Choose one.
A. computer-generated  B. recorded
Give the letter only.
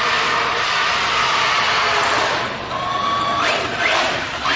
B